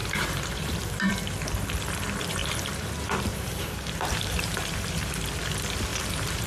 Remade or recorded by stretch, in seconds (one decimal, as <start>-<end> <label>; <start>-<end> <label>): 0.0-1.1 remade; 1.1-2.4 recorded; 2.4-5.1 remade; 5.1-5.9 recorded; 5.9-6.5 remade